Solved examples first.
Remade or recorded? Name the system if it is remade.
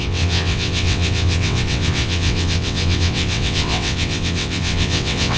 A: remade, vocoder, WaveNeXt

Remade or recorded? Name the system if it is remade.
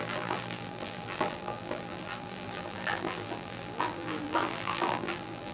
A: remade, vocoder, BigVGAN v2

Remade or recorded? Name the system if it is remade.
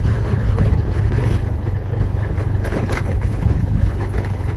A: remade, codec, HILCodec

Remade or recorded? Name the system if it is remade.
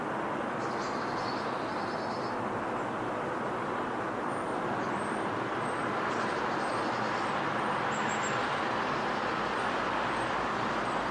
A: recorded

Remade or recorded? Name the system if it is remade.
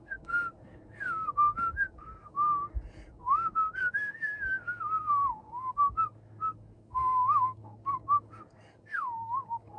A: remade, codec, DAC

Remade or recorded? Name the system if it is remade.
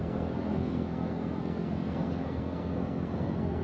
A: remade, codec, SNAC